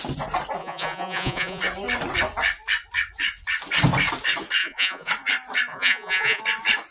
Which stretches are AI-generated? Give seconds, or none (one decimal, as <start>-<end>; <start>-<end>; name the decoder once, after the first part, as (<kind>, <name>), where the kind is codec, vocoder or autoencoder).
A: 0.6-1.6 (vocoder, Vocos); 4.6-5.1; 5.7-6.4